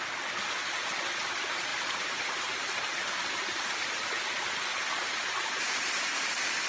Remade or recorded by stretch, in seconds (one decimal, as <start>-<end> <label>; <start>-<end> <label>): 0.0-1.7 recorded; 1.7-4.3 remade; 4.3-4.7 recorded; 4.7-5.9 remade; 5.9-6.7 recorded